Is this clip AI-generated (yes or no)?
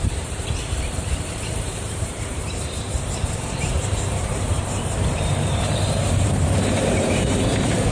yes